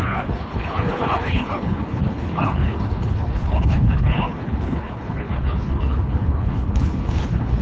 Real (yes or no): no